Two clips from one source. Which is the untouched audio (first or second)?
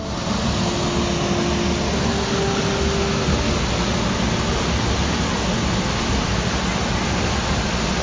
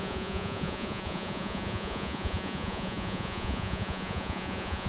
first